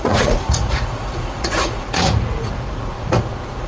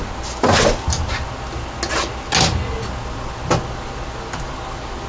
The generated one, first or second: first